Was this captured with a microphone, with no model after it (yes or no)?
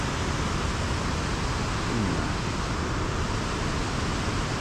yes